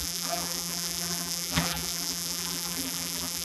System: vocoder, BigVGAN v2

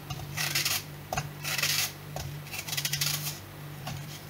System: vocoder, BigVGAN v2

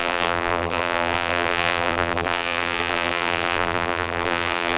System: vocoder, BigVGAN v2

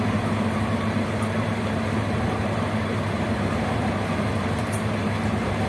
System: vocoder, BigVGAN v2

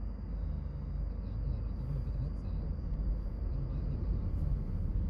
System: none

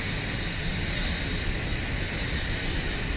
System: none